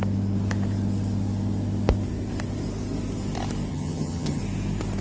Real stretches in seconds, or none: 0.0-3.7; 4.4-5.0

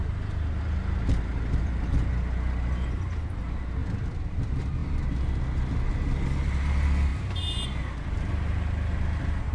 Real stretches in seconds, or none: 0.0-9.5

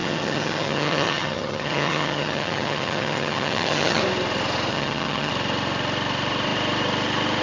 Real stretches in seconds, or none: 4.0-4.7; 5.3-7.4

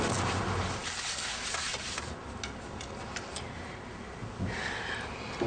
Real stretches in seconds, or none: 0.0-5.5

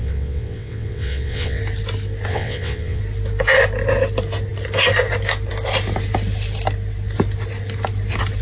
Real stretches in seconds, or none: 1.6-2.3; 3.0-8.4

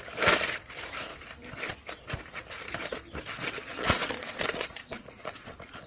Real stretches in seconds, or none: 0.0-3.7